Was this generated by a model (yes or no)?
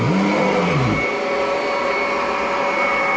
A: no